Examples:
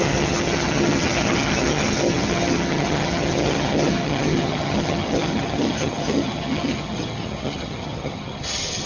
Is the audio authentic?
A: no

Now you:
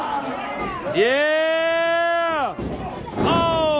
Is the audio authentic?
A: yes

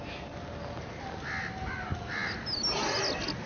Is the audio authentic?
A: yes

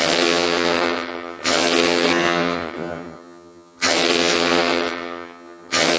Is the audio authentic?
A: no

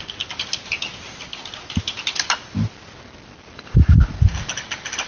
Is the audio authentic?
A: yes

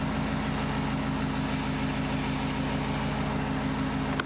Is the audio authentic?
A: yes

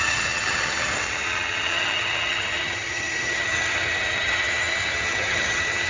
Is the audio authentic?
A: no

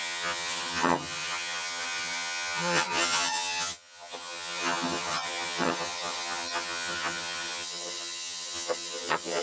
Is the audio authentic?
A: no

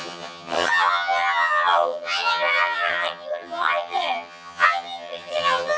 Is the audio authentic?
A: no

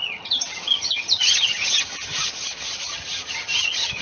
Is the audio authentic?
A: no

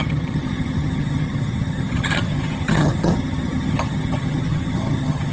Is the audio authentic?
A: no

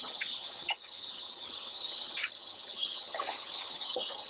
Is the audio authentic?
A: no